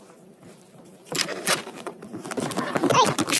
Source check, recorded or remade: remade